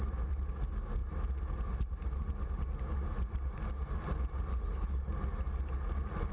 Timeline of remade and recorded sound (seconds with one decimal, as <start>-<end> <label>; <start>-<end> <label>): 0.0-4.5 recorded; 4.5-5.1 remade; 5.1-6.3 recorded